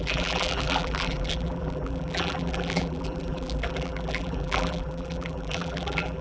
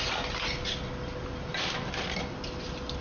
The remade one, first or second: first